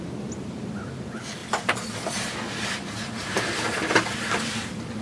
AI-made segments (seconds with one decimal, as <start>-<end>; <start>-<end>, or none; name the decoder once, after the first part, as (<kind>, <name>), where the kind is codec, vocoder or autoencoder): none